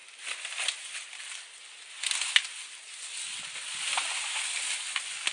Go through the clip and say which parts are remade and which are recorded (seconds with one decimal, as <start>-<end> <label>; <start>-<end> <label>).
0.0-5.3 recorded